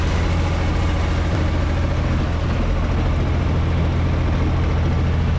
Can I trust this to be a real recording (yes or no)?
yes